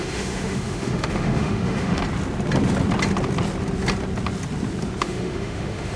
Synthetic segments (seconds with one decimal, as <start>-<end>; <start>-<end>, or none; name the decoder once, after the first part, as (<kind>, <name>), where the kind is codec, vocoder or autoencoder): 0.0-2.0 (autoencoder, DAC-VAE); 5.0-6.0